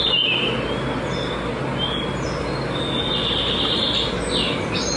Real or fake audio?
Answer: real